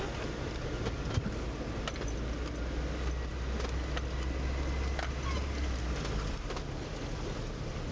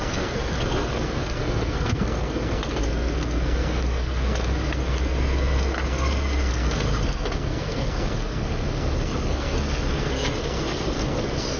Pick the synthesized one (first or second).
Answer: second